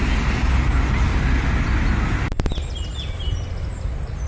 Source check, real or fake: real